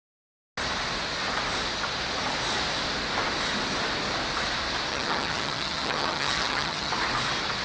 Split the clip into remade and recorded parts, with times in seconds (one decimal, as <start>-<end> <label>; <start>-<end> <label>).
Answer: 0.0-4.9 recorded; 4.9-6.9 remade; 6.9-7.6 recorded